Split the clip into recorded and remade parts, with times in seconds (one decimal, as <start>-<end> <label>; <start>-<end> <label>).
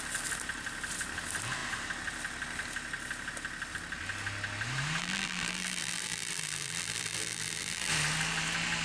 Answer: 0.0-5.0 recorded; 5.0-7.9 remade; 7.9-8.8 recorded